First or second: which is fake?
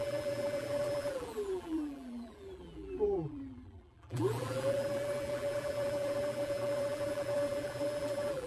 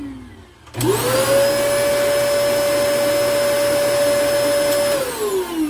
first